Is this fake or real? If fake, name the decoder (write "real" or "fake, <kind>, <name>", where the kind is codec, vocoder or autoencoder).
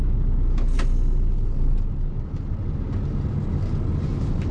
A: real